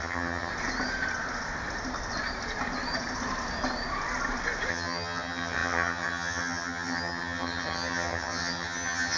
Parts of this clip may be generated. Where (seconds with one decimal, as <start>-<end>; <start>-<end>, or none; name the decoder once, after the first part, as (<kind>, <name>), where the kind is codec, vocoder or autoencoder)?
0.0-0.5 (vocoder, HiFi-GAN); 4.7-9.2